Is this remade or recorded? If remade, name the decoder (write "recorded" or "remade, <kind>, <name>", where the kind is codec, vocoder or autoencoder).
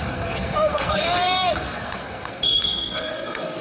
remade, codec, SNAC